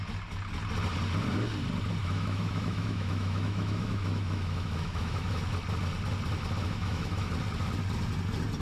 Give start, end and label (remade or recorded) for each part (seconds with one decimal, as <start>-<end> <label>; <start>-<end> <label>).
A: 0.0-2.0 recorded; 2.0-5.4 remade; 5.4-6.6 recorded; 6.6-7.3 remade; 7.3-8.6 recorded